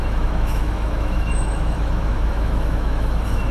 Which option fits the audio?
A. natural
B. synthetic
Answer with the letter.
B